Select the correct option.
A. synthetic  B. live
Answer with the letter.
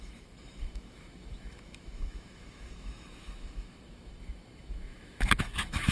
A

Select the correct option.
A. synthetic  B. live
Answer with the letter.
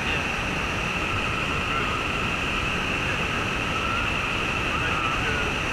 B